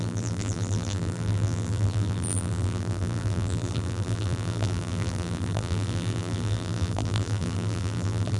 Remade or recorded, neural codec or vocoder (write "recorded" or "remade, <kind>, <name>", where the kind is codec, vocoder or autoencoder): remade, vocoder, BigVGAN v2